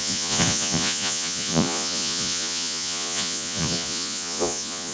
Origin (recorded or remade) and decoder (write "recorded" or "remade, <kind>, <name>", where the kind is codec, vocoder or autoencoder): remade, vocoder, Vocos